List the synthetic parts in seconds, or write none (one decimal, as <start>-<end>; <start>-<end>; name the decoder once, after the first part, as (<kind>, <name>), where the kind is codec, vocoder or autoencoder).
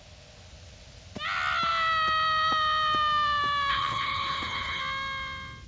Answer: 3.7-4.8 (codec, HILCodec)